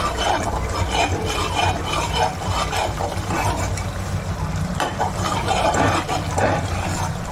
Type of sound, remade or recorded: recorded